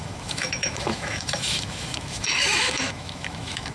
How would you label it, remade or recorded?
remade